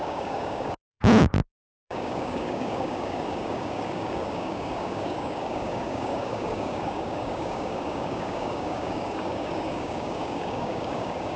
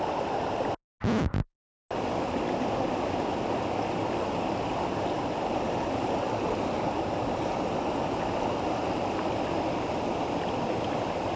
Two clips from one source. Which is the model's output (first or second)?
first